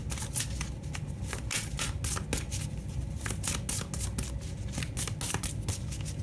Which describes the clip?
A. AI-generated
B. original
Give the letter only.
B